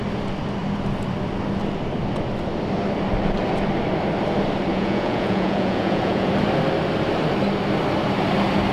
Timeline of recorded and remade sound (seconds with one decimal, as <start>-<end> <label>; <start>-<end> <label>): 0.0-4.7 recorded; 4.7-6.3 remade; 6.3-8.7 recorded